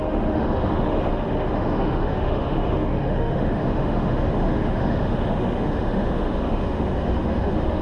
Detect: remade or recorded remade